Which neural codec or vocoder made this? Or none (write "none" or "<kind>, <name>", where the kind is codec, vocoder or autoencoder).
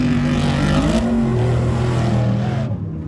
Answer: none